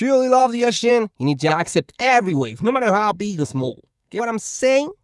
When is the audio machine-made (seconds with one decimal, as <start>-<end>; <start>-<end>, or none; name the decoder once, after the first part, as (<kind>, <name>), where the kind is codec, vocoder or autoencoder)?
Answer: 0.4-0.9 (codec, SNAC); 1.5-4.2